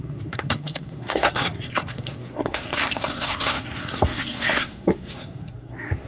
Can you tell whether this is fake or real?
fake